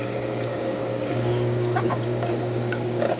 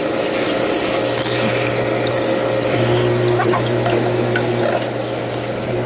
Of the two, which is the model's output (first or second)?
first